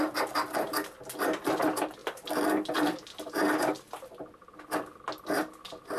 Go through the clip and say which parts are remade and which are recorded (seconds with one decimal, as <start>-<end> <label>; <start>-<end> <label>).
0.0-6.0 recorded